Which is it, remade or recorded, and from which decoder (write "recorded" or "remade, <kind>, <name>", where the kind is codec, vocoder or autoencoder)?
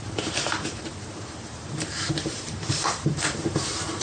remade, vocoder, BigVGAN v2